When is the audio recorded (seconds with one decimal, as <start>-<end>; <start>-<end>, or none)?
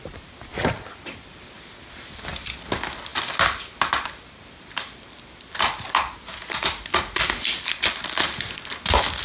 0.0-9.2